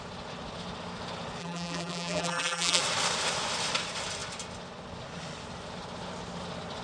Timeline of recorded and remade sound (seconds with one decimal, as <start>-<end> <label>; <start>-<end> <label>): 0.0-1.4 recorded; 1.4-2.8 remade; 2.8-6.8 recorded

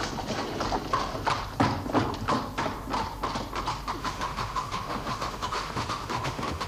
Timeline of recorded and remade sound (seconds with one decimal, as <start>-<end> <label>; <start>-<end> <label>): 0.0-4.0 recorded; 4.0-6.7 remade

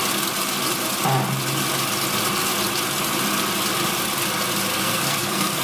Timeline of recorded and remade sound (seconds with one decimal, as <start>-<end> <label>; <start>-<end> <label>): 0.0-4.7 recorded; 4.7-5.6 remade

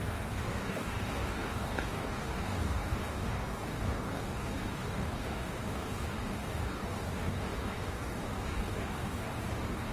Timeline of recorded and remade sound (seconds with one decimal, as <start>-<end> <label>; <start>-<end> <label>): 0.0-9.9 remade